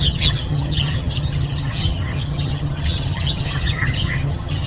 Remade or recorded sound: remade